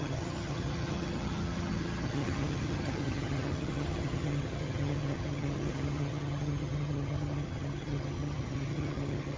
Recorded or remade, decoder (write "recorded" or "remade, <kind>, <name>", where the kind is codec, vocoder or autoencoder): remade, vocoder, HiFi-GAN